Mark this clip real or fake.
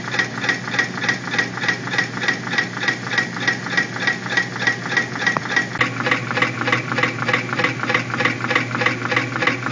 real